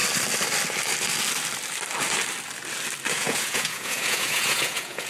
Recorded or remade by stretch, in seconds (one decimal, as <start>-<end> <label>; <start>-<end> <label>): 0.0-3.1 recorded; 3.1-5.1 remade